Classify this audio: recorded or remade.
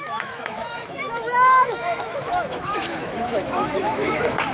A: remade